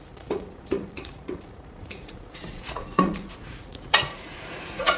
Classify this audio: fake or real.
fake